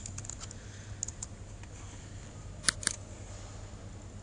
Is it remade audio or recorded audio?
recorded